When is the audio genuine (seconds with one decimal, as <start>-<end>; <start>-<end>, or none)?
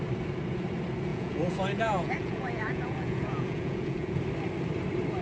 0.0-1.1; 4.2-5.2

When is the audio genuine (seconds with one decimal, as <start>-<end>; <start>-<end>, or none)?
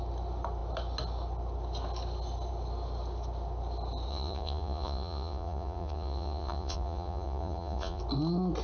0.0-4.1; 8.0-8.6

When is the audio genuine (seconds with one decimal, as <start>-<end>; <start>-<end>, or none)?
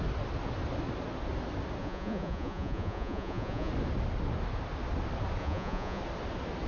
0.0-1.8; 3.7-5.4; 6.0-6.7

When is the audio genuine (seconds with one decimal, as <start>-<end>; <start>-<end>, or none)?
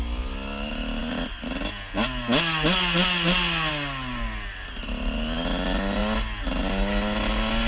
0.0-7.7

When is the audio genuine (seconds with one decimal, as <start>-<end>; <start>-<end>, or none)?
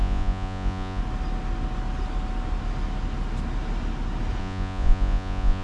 1.0-4.4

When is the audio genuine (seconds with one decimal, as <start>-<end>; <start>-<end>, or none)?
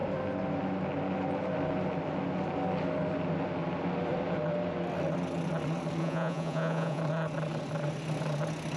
0.0-6.0; 7.0-8.8